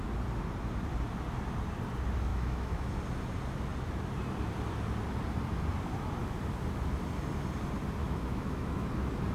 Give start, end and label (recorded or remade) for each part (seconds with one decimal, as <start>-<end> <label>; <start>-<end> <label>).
0.0-2.3 recorded; 2.3-2.9 remade; 2.9-8.0 recorded; 8.0-8.9 remade; 8.9-9.3 recorded